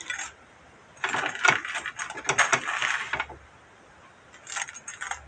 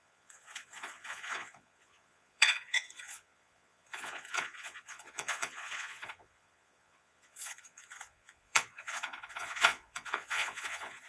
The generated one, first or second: second